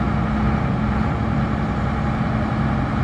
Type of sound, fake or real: real